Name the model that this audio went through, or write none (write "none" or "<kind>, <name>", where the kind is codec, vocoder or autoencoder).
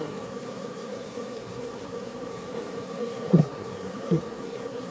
codec, SNAC